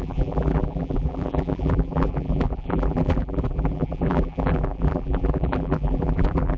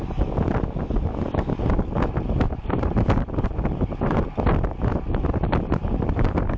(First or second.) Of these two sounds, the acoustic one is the second